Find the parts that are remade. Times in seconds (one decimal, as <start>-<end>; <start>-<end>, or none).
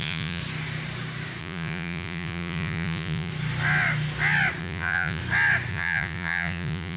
0.0-0.4; 1.4-3.3; 4.6-5.2; 5.7-7.0